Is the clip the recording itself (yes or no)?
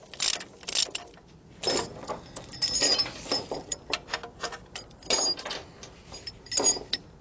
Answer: yes